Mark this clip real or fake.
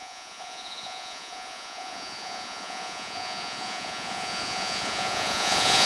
fake